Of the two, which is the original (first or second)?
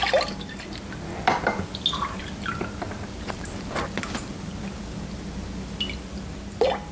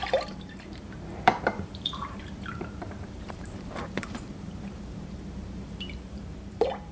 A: first